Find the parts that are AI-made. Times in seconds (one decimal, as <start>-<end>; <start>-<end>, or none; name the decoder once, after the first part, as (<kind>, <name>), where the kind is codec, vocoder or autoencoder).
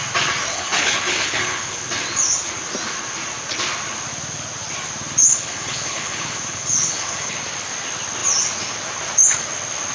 0.5-1.8 (codec, HILCodec); 5.2-7.4